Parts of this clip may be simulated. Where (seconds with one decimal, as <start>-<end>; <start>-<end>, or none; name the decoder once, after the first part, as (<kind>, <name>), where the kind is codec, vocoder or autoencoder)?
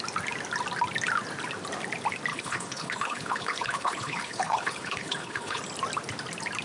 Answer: 2.3-5.6 (codec, HILCodec)